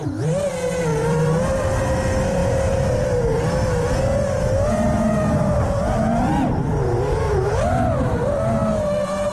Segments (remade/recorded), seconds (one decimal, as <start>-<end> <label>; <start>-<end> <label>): 0.0-0.9 recorded; 0.9-1.8 remade; 1.8-6.1 recorded; 6.1-6.6 remade; 6.6-9.3 recorded